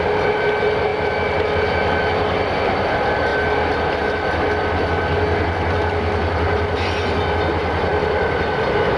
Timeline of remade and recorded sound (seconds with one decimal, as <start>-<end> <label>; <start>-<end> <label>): 0.0-0.9 recorded; 0.9-2.9 remade; 2.9-7.9 recorded; 7.9-8.6 remade; 8.6-9.0 recorded